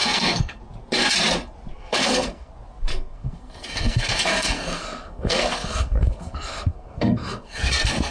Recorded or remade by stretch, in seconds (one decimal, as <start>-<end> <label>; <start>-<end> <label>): 0.0-0.6 remade; 0.6-1.7 recorded; 1.7-2.5 remade; 2.5-2.9 recorded; 2.9-8.1 remade